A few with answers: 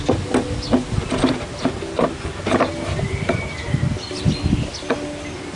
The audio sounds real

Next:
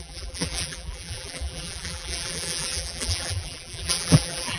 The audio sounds fake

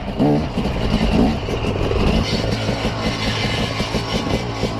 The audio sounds real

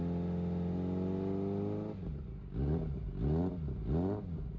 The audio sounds real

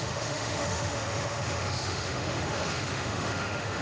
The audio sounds fake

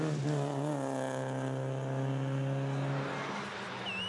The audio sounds real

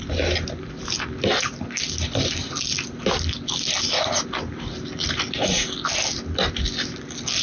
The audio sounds real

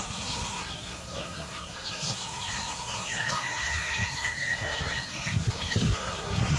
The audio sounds fake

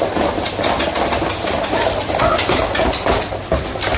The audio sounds real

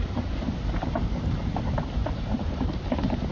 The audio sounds fake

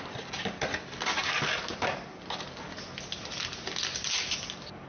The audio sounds real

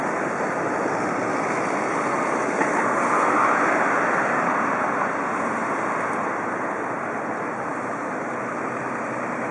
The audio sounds real